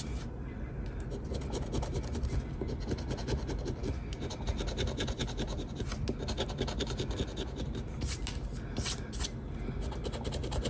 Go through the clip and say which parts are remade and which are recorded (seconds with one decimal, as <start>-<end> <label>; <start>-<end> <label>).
0.0-10.7 recorded